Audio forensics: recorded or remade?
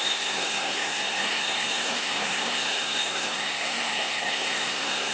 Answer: remade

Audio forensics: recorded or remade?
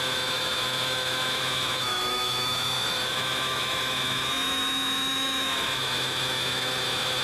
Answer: remade